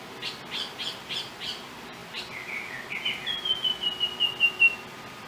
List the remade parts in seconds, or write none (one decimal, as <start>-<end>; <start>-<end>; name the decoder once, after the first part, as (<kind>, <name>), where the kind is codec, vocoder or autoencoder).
none